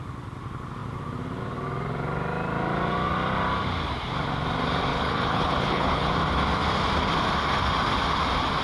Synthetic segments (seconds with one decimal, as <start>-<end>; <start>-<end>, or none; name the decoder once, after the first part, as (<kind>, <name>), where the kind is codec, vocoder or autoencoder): 4.9-6.1 (codec, HILCodec)